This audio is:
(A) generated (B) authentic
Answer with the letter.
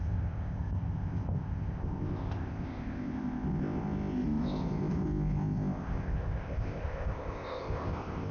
A